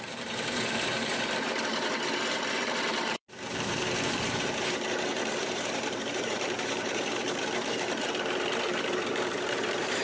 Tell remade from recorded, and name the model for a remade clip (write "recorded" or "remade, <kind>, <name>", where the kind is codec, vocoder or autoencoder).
remade, vocoder, BigVGAN v2